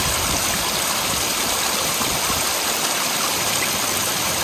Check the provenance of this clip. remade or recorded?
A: remade